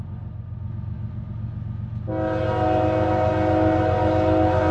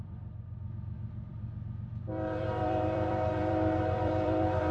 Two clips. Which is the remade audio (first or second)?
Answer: second